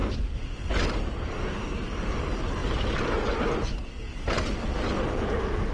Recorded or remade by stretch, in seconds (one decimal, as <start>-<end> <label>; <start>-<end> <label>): 0.0-5.7 recorded